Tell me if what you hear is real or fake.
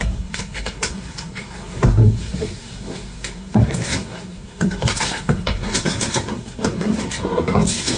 fake